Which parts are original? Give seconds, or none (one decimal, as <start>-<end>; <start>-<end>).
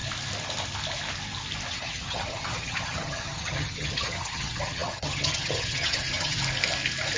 0.0-1.7; 6.4-7.2